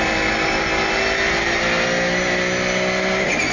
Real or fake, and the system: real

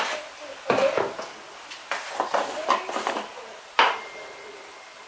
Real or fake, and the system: real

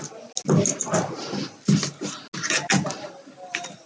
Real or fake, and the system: real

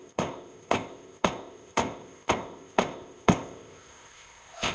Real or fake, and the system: fake, codec, ZipCodec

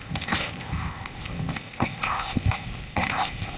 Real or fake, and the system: fake, codec, ZipCodec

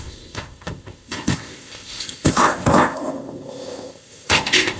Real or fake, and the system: fake, codec, ZipCodec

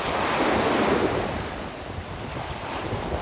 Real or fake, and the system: real